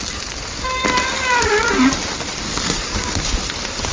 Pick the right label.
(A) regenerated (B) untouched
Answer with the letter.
B